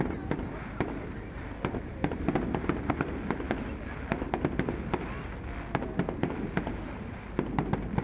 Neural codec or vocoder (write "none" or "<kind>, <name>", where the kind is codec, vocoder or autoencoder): none